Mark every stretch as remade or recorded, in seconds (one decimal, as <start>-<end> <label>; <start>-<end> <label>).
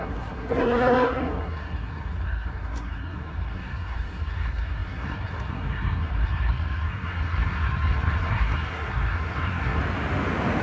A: 0.0-9.8 remade; 9.8-10.6 recorded